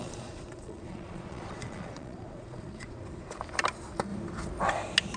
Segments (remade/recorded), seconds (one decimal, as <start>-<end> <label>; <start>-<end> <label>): 0.0-3.0 remade; 3.0-5.2 recorded